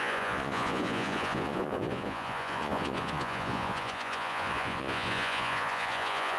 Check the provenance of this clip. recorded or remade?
remade